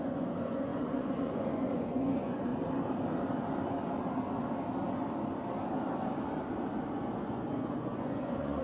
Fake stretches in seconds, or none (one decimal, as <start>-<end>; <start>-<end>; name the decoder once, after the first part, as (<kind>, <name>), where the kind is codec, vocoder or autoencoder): 0.0-2.5 (vocoder, Vocos); 6.9-8.6